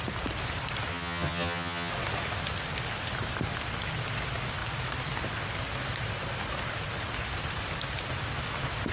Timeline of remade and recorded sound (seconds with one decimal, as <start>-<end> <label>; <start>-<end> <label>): 0.0-0.9 recorded; 0.9-1.9 remade; 1.9-8.9 recorded